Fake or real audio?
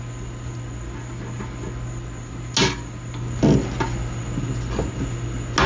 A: real